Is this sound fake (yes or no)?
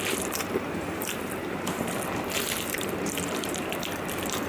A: yes